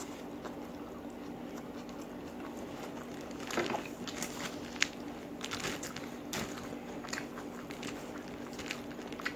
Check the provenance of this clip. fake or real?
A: real